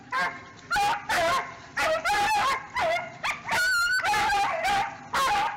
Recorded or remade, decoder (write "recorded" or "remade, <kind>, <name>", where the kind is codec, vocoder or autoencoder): recorded